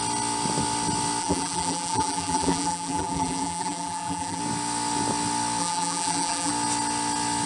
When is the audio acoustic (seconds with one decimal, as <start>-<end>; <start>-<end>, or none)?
0.0-1.2; 4.4-5.6; 6.5-7.5